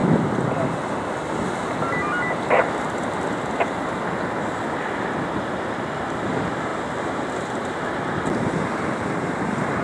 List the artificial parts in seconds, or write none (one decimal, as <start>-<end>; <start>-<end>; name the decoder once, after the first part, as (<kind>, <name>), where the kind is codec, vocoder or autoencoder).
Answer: 4.8-9.8 (vocoder, BigVGAN v2)